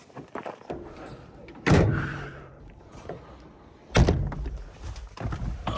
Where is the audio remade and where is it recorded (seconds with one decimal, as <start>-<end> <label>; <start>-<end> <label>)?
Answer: 0.0-1.9 recorded; 1.9-3.3 remade; 3.3-5.8 recorded